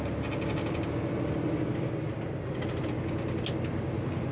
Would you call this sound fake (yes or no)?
no